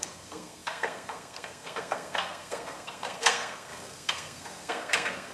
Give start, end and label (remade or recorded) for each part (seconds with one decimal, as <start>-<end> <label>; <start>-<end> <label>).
0.0-5.3 remade